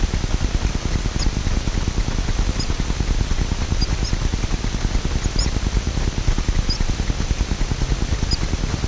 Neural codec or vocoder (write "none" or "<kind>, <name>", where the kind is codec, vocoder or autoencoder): none